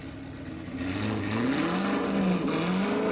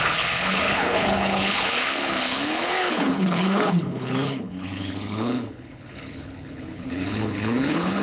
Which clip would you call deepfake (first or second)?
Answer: second